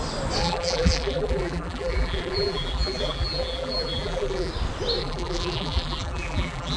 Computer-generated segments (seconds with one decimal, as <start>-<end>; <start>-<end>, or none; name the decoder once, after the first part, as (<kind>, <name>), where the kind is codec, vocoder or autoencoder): 0.4-4.5 (vocoder, BigVGAN v2); 5.0-6.8